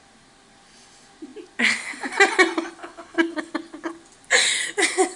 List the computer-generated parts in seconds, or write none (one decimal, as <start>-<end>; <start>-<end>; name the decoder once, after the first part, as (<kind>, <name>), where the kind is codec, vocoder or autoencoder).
2.8-3.5 (codec, HILCodec)

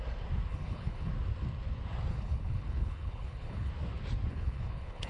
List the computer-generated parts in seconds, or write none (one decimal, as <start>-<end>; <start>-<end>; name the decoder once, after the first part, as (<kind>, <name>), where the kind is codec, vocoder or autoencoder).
0.5-1.1 (codec, HILCodec); 2.1-3.7; 4.3-5.1

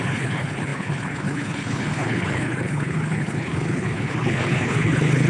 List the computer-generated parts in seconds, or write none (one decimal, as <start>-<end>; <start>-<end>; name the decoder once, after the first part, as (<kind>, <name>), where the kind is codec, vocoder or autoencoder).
0.0-5.3 (codec, HILCodec)

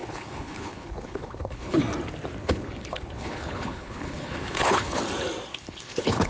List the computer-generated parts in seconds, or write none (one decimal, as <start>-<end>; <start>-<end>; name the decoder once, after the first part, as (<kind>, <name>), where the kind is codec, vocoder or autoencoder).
0.0-1.8 (codec, HILCodec); 2.4-5.0; 5.5-6.3

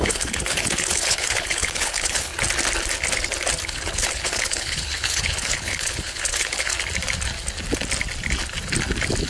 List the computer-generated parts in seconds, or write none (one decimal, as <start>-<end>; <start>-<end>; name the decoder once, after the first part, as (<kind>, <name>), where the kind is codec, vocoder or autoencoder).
0.0-2.3 (codec, HILCodec); 3.7-6.7

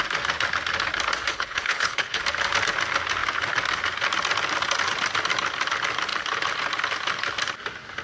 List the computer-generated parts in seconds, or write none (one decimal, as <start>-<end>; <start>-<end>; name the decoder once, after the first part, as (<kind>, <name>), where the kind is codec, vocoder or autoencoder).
1.3-2.2 (codec, HILCodec)